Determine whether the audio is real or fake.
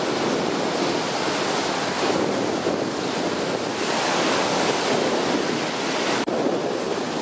real